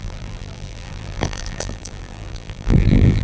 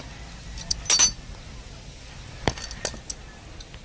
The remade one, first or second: first